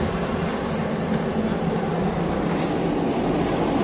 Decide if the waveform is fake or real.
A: real